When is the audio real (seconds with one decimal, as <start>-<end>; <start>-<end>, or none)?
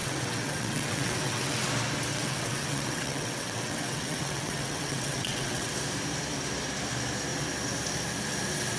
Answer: 1.7-2.1; 5.7-8.8